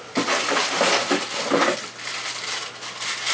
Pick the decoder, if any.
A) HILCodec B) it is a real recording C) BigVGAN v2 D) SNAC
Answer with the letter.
B